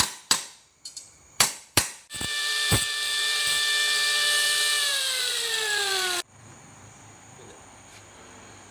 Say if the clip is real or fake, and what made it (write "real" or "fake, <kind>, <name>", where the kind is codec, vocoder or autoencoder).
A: fake, vocoder, BigVGAN v2